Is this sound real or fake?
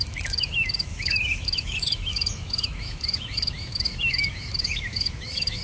fake